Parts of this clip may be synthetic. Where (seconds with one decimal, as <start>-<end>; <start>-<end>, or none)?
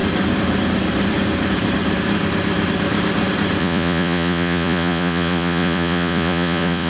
3.6-6.9